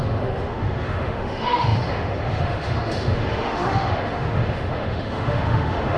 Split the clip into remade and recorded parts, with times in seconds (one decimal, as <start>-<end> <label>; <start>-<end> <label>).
0.0-6.0 remade